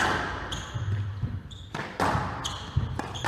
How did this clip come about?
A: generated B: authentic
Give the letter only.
B